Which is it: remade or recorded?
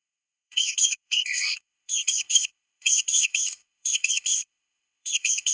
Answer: remade